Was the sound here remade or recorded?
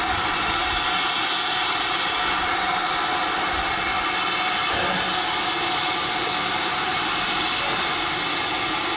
recorded